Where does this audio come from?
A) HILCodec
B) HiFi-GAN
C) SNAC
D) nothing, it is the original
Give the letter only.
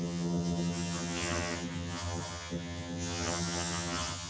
B